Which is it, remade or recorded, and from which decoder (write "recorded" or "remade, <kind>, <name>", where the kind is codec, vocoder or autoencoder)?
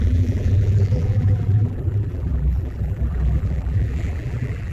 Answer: remade, vocoder, BigVGAN v2